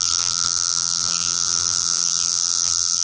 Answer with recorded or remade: remade